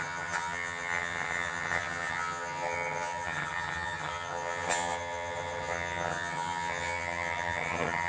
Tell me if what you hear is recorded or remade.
remade